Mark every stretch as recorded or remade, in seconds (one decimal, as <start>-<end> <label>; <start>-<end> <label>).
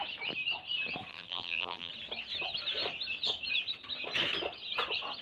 0.0-1.1 recorded; 1.1-1.9 remade; 1.9-5.2 recorded